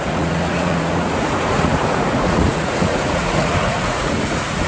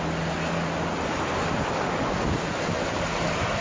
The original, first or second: second